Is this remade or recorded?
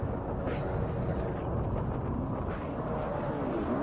recorded